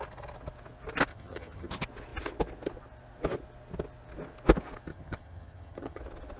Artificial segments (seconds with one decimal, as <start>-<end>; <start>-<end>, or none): 1.1-1.7; 4.9-6.0